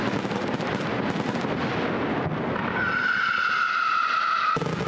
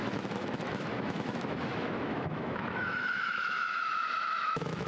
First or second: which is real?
first